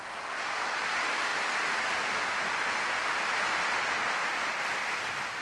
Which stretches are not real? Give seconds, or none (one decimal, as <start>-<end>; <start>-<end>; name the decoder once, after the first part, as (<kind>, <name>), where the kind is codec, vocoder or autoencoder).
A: none